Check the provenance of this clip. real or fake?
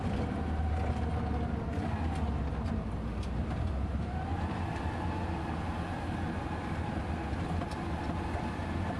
real